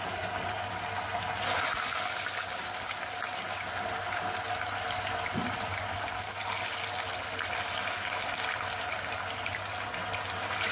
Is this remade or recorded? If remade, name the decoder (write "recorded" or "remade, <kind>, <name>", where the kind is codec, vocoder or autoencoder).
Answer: recorded